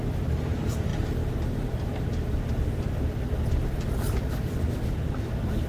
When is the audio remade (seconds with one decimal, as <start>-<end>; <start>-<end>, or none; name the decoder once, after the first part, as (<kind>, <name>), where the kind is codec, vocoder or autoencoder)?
0.0-0.9 (vocoder, BigVGAN v2); 2.5-5.7